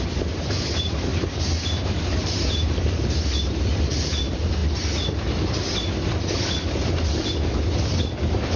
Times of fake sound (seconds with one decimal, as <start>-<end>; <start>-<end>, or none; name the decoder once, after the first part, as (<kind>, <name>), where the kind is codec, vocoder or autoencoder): 1.1-3.8 (vocoder, BigVGAN v2)